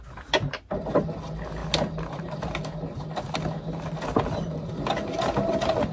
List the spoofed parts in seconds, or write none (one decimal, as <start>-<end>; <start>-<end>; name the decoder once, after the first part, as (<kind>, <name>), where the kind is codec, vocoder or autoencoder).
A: none